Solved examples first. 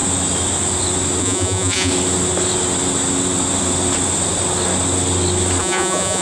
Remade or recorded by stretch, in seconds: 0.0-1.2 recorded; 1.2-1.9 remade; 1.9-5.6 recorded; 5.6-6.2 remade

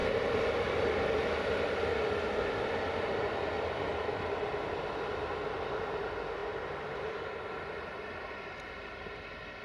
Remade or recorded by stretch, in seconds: 0.0-9.6 recorded